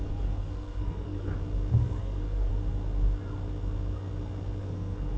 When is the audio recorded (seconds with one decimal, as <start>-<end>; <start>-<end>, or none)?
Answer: 1.3-2.0; 2.5-4.6